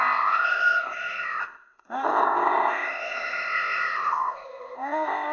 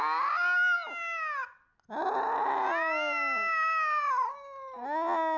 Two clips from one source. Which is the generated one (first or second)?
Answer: first